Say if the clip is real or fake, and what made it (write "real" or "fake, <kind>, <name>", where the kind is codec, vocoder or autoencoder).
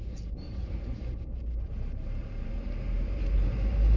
fake, vocoder, BigVGAN v2